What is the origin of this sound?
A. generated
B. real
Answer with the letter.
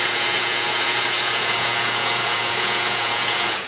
A